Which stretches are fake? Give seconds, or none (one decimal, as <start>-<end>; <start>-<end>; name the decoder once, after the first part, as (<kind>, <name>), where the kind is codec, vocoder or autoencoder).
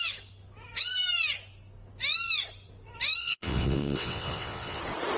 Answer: 3.2-4.8 (vocoder, WaveNeXt)